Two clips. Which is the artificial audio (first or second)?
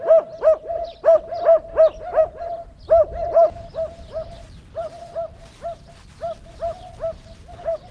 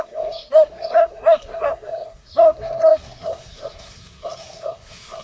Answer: second